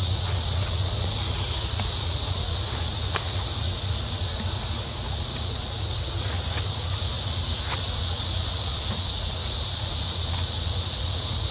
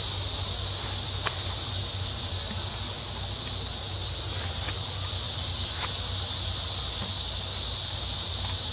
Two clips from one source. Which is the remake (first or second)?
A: first